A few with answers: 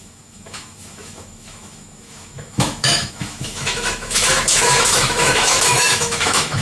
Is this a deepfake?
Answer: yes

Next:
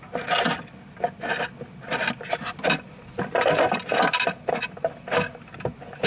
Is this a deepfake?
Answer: no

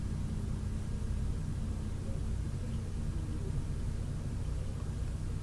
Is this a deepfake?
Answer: no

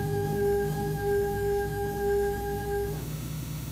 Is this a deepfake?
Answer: yes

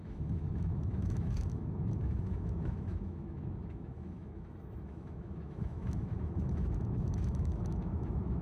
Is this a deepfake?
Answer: yes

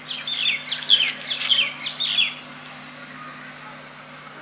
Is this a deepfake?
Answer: no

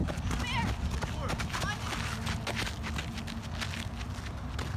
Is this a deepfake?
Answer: no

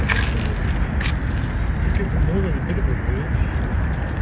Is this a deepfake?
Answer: no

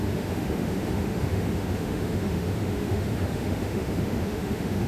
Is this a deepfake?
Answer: yes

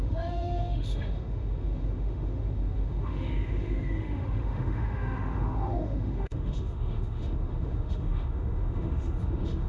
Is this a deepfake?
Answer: yes